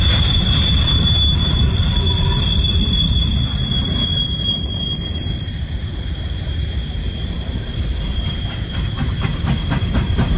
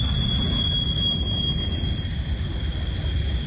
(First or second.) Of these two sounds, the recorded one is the second